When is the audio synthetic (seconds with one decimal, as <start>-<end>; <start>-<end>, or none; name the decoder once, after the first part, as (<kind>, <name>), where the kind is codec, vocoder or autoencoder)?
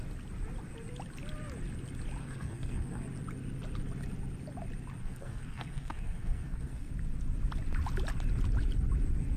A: 2.2-3.0 (codec, SNAC); 5.0-6.9